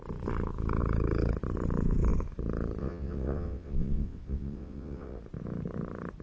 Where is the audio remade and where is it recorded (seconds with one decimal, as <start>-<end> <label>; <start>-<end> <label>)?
0.0-2.8 recorded; 2.8-5.2 remade; 5.2-6.2 recorded